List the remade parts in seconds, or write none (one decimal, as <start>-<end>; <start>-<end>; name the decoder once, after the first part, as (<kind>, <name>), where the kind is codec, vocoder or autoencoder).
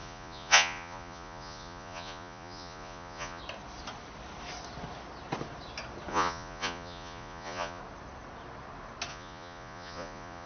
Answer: 0.0-3.4 (vocoder, Vocos); 6.1-7.8; 9.1-10.5